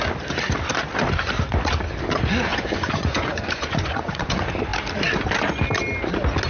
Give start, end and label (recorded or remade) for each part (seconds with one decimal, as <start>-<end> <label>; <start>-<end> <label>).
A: 0.0-2.5 recorded; 2.5-4.3 remade; 4.3-6.5 recorded